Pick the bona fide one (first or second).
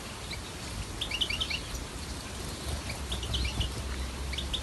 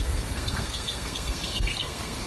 first